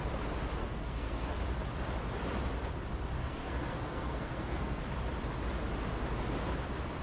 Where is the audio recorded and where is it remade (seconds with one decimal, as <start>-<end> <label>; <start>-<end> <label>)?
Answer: 0.0-0.6 recorded; 0.6-1.4 remade; 1.4-3.2 recorded; 3.2-4.8 remade; 4.8-7.0 recorded